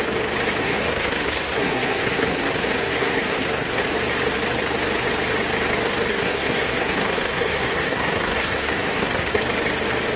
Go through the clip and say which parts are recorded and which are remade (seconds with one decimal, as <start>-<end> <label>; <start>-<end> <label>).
0.0-0.6 recorded; 0.6-3.8 remade; 3.8-6.1 recorded; 6.1-9.4 remade; 9.4-10.2 recorded